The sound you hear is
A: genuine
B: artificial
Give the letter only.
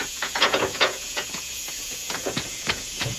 B